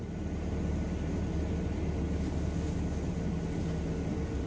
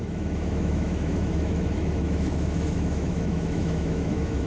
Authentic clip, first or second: first